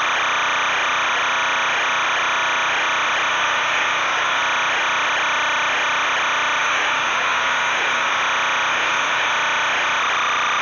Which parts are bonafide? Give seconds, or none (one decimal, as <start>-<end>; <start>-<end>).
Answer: 0.0-3.3; 4.4-6.6; 8.2-8.7; 9.3-10.6